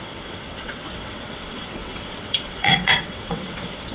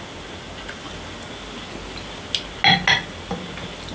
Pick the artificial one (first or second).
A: first